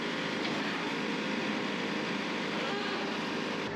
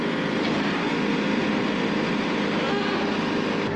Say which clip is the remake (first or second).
first